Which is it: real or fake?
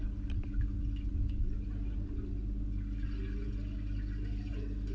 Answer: real